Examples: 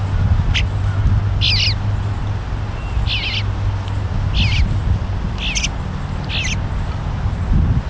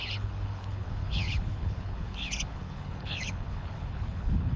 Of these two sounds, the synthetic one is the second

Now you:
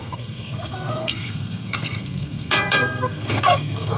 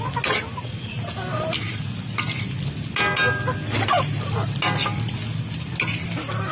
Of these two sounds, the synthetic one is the first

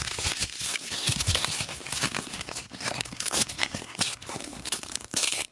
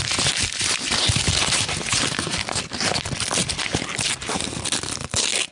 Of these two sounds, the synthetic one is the first